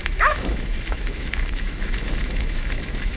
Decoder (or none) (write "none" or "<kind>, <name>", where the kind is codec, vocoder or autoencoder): autoencoder, DAC-VAE